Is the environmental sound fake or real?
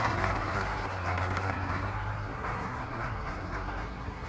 fake